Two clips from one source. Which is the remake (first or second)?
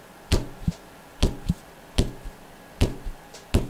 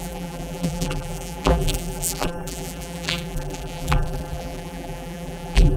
second